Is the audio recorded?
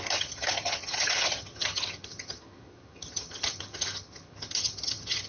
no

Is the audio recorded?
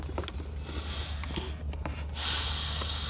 yes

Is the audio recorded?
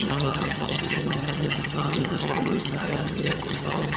no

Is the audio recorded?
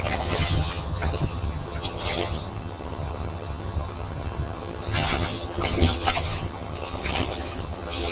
no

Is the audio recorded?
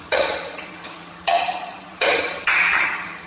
no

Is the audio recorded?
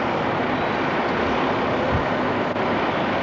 yes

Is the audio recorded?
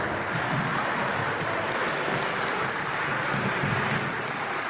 yes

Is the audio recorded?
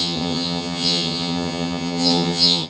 no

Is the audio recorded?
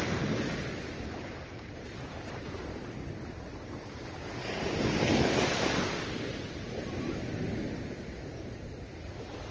yes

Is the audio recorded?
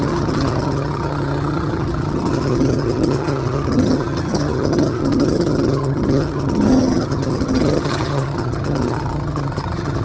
no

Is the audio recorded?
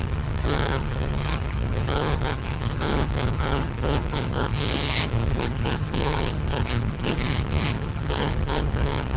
no